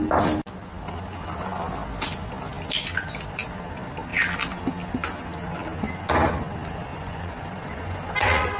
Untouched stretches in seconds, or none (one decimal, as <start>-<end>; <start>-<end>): 0.0-6.9